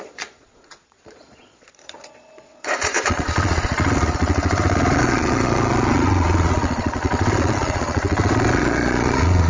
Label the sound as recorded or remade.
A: remade